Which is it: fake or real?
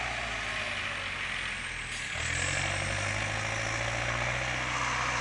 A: real